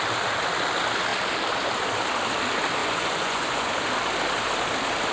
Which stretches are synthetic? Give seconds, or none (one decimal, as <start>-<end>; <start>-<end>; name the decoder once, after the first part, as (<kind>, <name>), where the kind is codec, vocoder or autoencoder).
2.8-3.7 (vocoder, Vocos)